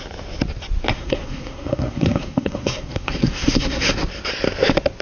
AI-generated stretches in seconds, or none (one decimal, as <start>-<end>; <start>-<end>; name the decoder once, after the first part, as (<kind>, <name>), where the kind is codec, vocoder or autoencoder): 0.9-3.9 (codec, SNAC)